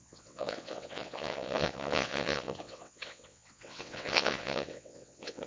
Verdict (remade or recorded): remade